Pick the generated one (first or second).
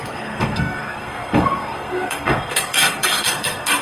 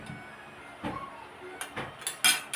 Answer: first